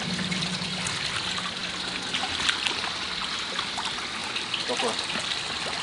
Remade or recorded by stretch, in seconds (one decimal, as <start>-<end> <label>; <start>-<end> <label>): 0.0-5.8 recorded